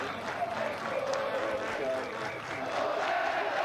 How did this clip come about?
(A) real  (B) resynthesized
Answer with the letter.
A